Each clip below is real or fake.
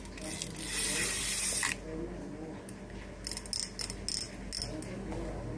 real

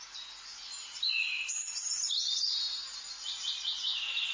real